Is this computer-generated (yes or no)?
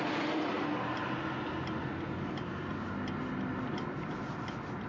no